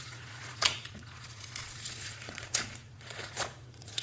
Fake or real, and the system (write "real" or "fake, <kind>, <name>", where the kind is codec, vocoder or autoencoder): fake, vocoder, Vocos